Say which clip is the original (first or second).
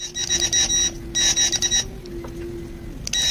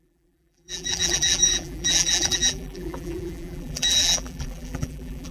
first